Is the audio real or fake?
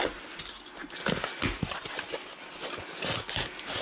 real